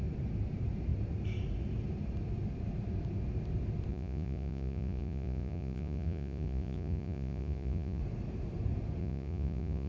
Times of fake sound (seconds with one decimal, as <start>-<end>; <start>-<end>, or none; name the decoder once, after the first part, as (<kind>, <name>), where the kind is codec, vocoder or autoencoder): 3.9-8.0 (vocoder, Vocos); 9.0-9.9